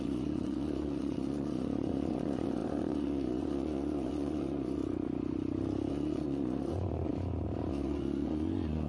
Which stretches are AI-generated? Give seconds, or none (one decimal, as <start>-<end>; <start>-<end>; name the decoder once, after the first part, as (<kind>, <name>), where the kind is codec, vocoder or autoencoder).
0.0-4.8 (vocoder, Vocos); 5.9-7.1; 7.7-8.9